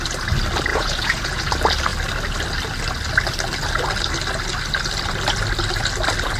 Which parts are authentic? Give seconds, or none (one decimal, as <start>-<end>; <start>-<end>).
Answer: 0.0-0.7; 1.5-6.4